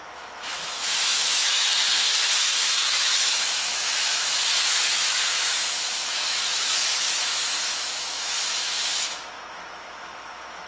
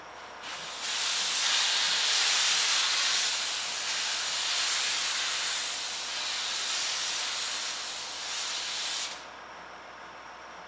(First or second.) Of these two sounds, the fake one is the first